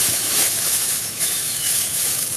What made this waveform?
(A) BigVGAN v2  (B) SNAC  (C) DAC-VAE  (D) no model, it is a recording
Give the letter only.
C